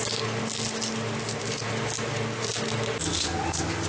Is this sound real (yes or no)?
yes